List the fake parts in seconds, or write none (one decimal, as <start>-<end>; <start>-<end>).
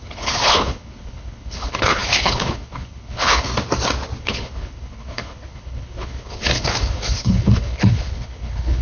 0.0-3.5; 4.2-8.8